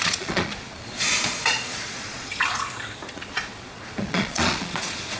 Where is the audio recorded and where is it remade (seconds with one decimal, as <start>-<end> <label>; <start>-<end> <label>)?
0.0-2.3 remade; 2.3-3.1 recorded; 3.1-5.2 remade

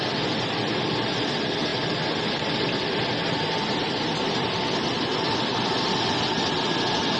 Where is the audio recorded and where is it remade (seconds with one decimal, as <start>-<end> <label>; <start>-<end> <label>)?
0.0-7.2 recorded

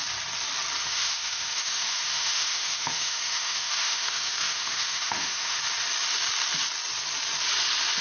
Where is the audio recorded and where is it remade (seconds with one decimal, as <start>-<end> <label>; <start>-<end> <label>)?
0.0-0.8 recorded; 0.8-5.6 remade; 5.6-8.0 recorded

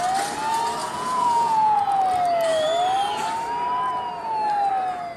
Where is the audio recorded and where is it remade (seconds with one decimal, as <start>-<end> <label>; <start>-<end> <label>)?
0.0-0.8 recorded; 0.8-2.0 remade; 2.0-5.2 recorded

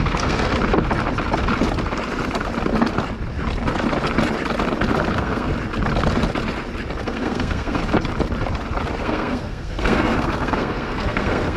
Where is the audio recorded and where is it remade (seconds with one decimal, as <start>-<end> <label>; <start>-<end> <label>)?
0.0-0.5 remade; 0.5-5.1 recorded; 5.1-5.5 remade; 5.5-7.0 recorded; 7.0-7.8 remade; 7.8-9.0 recorded; 9.0-11.6 remade

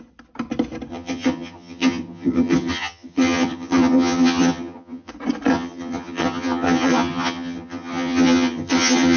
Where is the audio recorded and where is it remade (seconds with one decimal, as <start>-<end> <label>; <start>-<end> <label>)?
0.0-0.9 recorded; 0.9-5.1 remade; 5.1-5.5 recorded; 5.5-9.2 remade

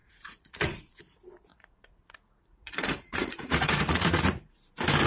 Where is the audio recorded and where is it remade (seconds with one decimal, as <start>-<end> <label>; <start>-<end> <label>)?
0.0-1.0 remade; 1.0-1.5 recorded; 1.5-4.6 remade; 4.6-5.1 recorded

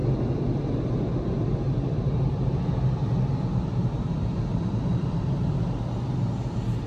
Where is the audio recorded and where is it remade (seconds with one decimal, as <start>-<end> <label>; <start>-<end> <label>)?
0.0-6.9 recorded